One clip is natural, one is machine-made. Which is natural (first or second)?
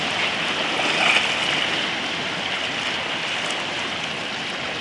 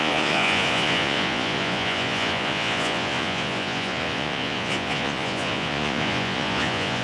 first